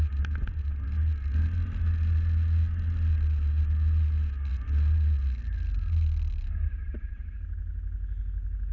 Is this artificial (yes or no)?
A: no